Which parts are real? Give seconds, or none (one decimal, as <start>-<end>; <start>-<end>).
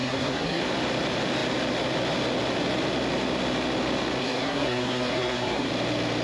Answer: 0.6-4.2; 5.7-6.2